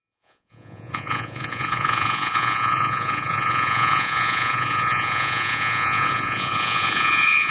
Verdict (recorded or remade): remade